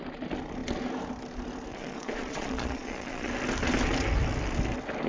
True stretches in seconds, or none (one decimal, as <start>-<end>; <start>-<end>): 0.0-1.7; 3.3-5.1